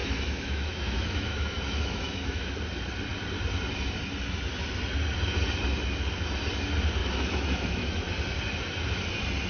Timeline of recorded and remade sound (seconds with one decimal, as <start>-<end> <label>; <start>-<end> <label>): 0.0-2.5 remade; 2.5-7.0 recorded; 7.0-8.1 remade; 8.1-9.5 recorded